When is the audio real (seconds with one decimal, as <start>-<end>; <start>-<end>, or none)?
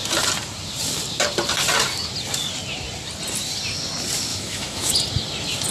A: 0.0-4.3; 4.9-5.7